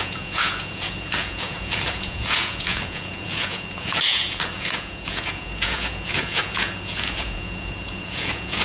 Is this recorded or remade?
remade